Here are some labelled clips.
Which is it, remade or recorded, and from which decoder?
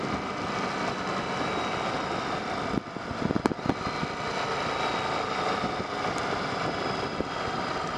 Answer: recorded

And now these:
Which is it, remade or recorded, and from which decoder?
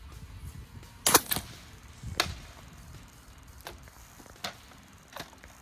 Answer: recorded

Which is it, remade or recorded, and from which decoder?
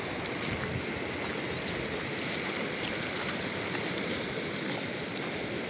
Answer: recorded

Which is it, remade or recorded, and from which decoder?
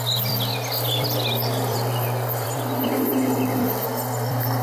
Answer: remade, vocoder, BigVGAN v2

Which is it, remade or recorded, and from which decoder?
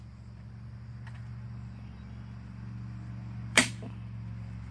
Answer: remade, vocoder, BigVGAN v2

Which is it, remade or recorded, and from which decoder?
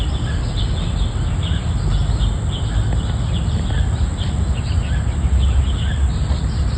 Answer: recorded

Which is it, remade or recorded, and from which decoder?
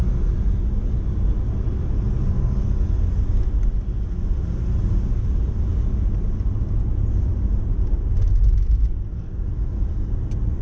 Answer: recorded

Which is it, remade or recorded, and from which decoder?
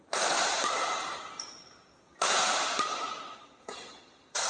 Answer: remade, vocoder, BigVGAN v2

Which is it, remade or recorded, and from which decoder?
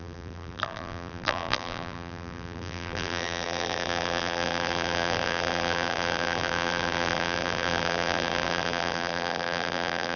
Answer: remade, vocoder, BigVGAN v2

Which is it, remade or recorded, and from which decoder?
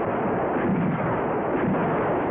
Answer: recorded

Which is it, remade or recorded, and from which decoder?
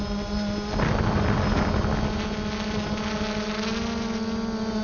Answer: recorded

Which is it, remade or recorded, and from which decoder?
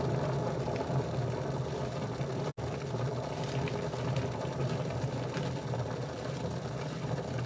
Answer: remade, vocoder, BigVGAN v2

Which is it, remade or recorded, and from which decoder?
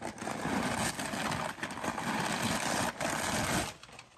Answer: recorded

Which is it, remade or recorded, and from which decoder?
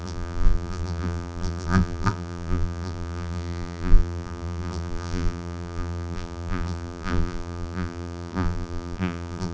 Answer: remade, vocoder, BigVGAN v2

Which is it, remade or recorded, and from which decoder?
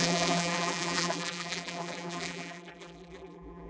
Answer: remade, vocoder, BigVGAN v2